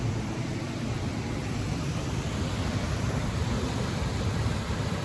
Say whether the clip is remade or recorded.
remade